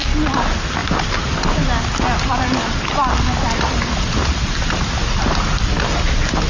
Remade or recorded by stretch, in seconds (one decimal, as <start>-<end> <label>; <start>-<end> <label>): 0.0-6.5 recorded